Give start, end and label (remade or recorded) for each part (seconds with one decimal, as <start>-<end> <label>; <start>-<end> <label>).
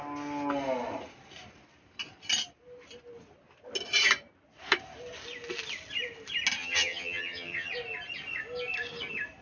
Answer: 0.0-6.6 recorded; 6.6-7.7 remade; 7.7-9.4 recorded